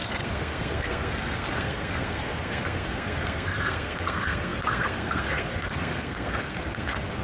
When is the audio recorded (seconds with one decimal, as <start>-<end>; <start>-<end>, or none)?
none